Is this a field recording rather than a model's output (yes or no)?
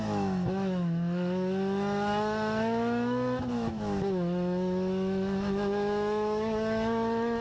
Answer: no